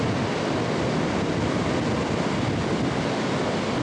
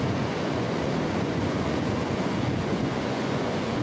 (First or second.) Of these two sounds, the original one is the first